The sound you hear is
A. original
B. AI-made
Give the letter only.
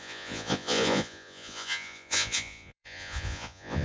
B